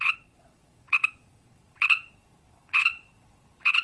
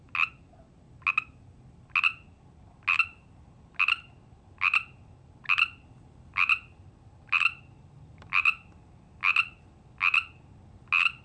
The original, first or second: second